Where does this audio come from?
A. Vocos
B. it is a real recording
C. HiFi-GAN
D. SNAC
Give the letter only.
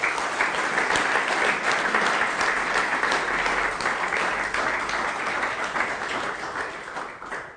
B